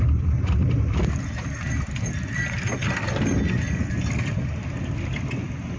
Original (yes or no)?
yes